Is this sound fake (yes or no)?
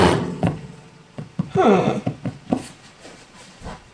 yes